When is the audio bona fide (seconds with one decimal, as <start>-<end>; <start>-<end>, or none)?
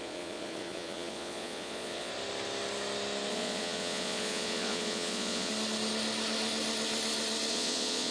2.1-3.3; 5.5-7.5